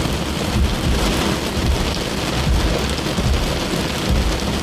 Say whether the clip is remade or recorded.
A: recorded